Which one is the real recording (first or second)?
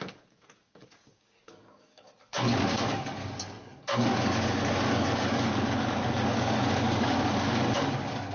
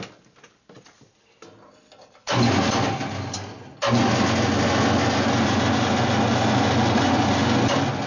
second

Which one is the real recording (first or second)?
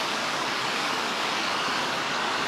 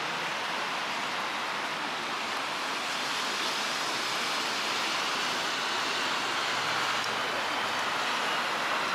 second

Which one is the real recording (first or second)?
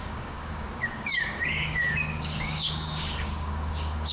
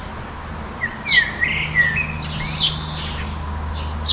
second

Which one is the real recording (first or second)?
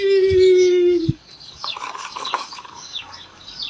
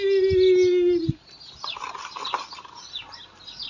second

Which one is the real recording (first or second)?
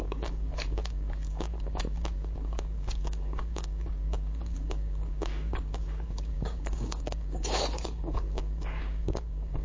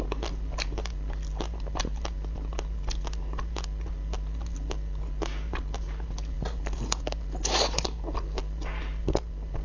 second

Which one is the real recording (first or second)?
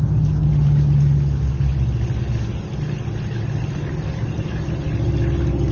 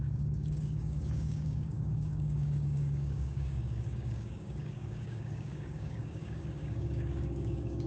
first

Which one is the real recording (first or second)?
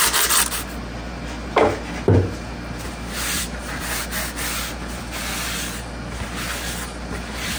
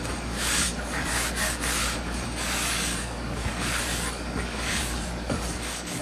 first